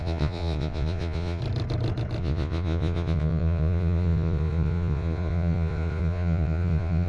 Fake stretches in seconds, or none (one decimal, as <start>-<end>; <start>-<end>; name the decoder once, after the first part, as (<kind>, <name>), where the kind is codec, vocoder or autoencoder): 0.0-1.4 (vocoder, Vocos); 2.2-7.1